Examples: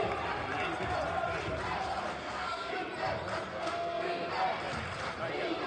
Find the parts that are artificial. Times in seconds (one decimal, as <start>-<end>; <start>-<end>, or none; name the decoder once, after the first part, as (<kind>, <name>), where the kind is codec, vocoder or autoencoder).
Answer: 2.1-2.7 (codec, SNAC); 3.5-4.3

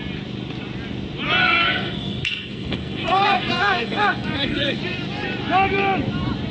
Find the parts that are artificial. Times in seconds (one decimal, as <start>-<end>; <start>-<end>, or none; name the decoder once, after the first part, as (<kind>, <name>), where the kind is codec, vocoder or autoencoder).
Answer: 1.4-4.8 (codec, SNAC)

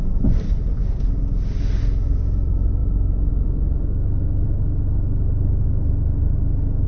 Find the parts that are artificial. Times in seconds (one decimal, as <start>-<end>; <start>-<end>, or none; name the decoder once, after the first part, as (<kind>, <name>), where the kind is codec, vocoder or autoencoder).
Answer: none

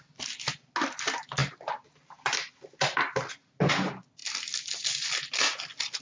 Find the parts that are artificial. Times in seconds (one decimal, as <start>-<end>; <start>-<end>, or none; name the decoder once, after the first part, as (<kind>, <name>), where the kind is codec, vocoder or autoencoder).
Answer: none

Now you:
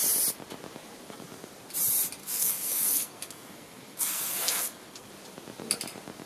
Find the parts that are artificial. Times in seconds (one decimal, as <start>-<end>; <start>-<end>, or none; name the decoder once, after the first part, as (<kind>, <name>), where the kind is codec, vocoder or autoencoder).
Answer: 2.2-5.1 (codec, SNAC)

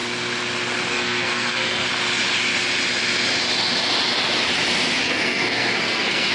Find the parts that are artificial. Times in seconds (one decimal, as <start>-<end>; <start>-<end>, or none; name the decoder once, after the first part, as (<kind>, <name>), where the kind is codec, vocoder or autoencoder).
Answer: 0.9-1.9 (codec, SNAC); 5.0-6.3